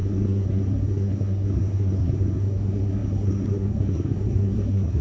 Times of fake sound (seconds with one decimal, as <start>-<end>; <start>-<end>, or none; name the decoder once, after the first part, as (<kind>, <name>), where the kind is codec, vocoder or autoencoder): 0.0-5.0 (codec, SNAC)